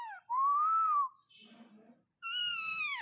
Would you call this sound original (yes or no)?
no